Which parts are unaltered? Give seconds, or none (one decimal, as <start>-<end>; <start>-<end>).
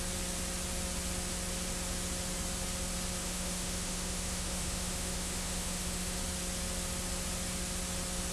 0.0-3.2; 6.2-8.3